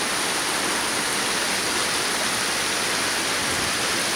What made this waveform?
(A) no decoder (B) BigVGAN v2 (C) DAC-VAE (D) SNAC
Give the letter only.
A